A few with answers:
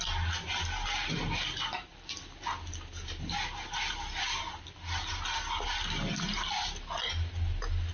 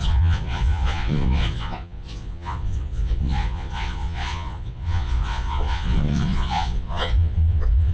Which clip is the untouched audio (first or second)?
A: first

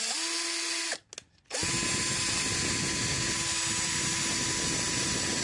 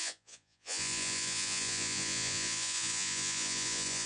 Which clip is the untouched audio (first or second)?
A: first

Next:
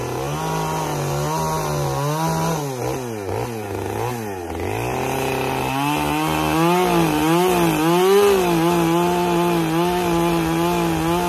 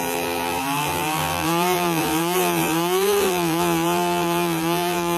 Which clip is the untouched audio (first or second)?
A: first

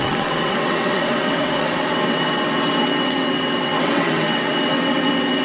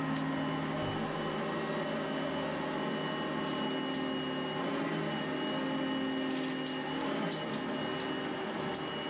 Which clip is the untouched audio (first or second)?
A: second